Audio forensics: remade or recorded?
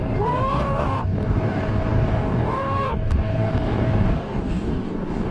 remade